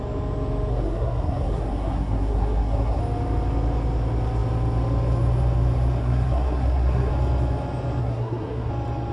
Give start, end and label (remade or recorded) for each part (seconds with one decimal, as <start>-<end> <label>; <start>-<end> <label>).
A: 0.0-0.7 recorded; 0.7-3.0 remade; 3.0-6.0 recorded; 6.0-7.1 remade; 7.1-8.0 recorded; 8.0-8.7 remade; 8.7-9.1 recorded